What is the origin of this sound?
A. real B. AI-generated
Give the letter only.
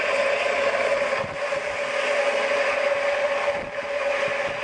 A